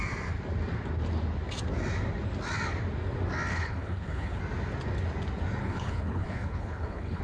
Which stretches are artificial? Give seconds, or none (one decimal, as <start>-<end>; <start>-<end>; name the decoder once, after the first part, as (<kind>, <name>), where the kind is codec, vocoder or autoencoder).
3.5-4.4 (codec, HILCodec); 5.6-7.2